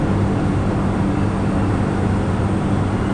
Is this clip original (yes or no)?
yes